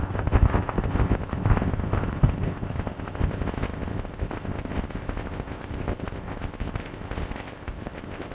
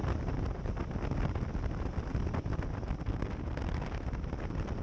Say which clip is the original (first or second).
second